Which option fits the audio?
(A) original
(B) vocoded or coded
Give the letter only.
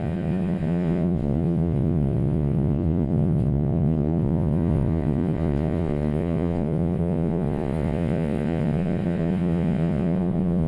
B